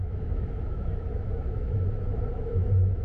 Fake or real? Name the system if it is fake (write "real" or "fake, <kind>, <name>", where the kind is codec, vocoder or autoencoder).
fake, autoencoder, DAC-VAE